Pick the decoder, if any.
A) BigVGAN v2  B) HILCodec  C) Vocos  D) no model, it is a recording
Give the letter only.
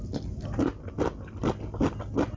D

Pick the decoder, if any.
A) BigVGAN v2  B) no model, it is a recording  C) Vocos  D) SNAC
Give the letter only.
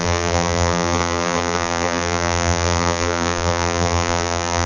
A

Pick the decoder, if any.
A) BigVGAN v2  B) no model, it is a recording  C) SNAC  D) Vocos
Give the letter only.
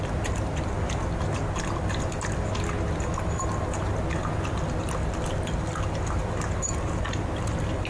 B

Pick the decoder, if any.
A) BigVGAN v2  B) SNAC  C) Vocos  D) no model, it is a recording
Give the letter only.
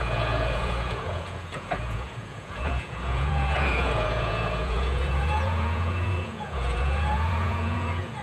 C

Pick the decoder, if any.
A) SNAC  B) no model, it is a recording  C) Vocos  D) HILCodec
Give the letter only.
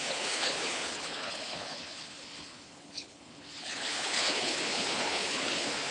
D